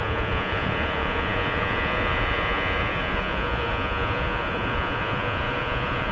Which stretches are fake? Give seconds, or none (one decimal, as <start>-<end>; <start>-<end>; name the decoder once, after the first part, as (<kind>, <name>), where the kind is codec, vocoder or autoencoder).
0.0-6.1 (vocoder, Vocos)